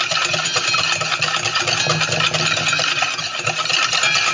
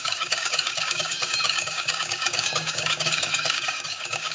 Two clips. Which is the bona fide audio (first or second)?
first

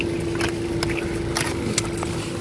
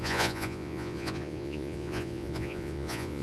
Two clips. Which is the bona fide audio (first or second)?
first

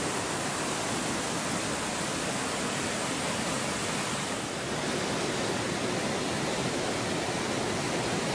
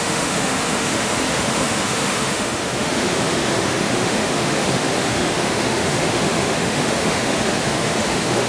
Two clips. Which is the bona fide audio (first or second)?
first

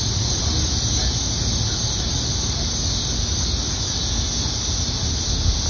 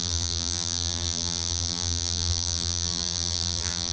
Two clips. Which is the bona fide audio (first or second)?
first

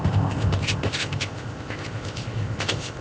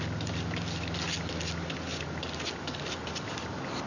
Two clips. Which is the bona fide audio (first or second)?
second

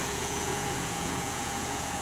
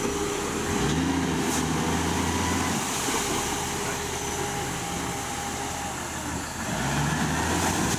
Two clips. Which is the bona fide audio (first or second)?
second